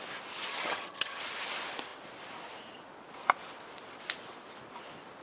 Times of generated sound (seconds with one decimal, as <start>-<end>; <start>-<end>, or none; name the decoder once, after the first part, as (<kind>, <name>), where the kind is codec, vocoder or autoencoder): 0.5-1.2 (vocoder, HiFi-GAN)